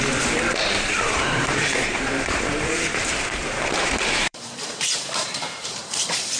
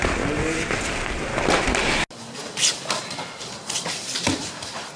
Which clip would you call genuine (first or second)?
second